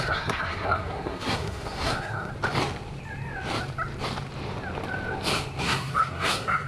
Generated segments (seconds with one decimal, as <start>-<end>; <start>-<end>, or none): 0.0-2.3; 5.6-6.7